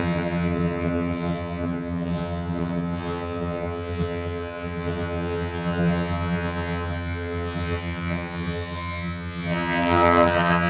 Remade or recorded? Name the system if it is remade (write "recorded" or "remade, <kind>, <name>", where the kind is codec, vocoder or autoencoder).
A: remade, vocoder, HiFi-GAN